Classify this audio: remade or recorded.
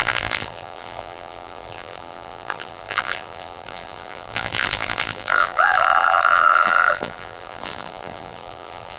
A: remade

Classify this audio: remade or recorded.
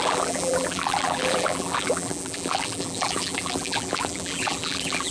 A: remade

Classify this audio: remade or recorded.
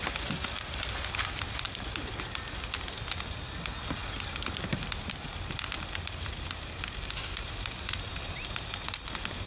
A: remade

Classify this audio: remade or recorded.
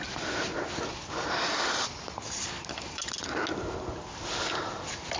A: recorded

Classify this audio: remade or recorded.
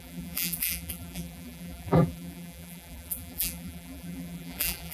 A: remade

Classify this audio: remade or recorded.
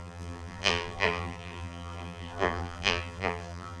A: remade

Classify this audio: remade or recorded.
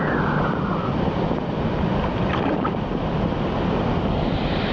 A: remade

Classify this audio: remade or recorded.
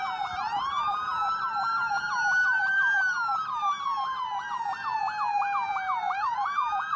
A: remade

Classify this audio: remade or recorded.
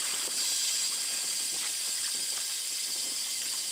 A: remade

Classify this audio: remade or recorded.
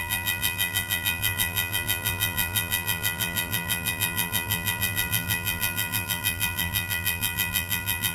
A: remade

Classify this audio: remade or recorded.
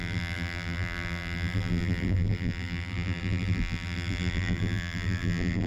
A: remade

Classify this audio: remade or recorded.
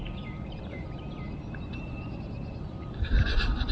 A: remade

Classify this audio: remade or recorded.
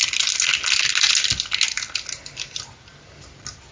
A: recorded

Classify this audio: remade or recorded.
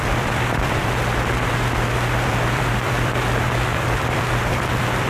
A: remade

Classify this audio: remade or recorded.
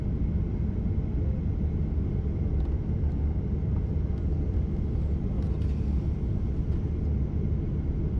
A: recorded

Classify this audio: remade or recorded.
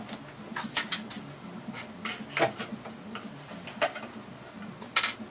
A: recorded